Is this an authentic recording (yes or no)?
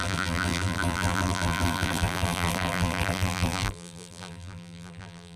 no